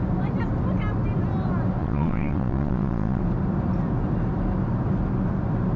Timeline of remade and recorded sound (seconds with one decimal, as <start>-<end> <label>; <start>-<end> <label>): 0.0-1.8 recorded; 1.8-3.2 remade; 3.2-5.8 recorded